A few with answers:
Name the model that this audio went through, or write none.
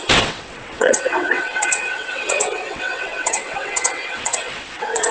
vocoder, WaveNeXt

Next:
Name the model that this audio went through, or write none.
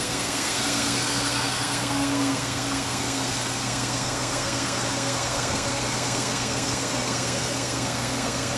codec, SNAC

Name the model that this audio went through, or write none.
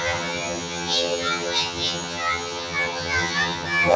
vocoder, HiFi-GAN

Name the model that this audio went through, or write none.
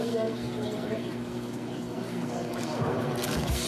codec, SNAC